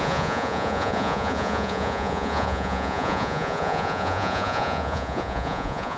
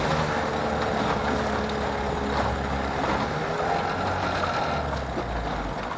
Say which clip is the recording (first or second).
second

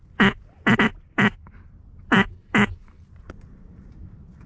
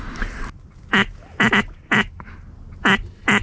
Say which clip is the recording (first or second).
second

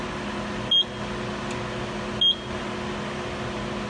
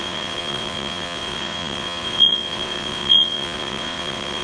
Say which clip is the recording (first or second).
first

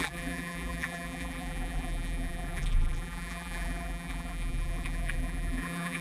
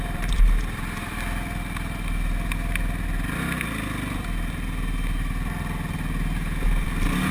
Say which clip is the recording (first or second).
second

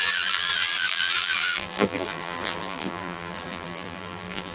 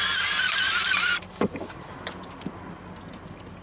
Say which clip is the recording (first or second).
second